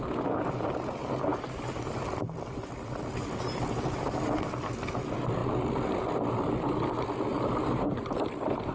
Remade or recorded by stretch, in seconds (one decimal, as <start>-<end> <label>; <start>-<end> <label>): 0.0-8.7 recorded